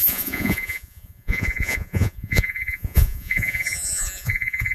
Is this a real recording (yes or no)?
no